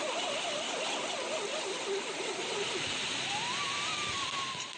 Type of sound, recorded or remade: recorded